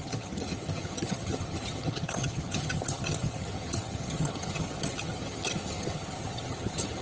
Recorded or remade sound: remade